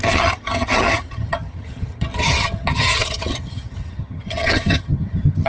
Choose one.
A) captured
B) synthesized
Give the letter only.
B